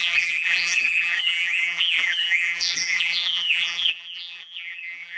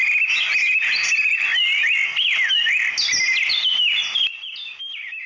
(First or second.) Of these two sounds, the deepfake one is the first